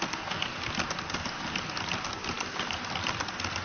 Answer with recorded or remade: recorded